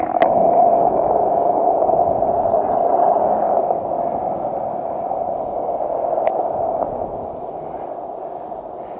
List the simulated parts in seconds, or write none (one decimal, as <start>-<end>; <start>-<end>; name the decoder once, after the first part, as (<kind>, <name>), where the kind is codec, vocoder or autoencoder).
2.5-3.2 (codec, HILCodec)